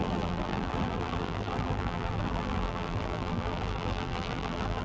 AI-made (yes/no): yes